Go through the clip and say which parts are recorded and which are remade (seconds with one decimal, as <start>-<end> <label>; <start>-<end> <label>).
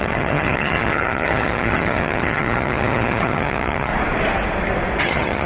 0.0-3.9 remade; 3.9-5.0 recorded; 5.0-5.5 remade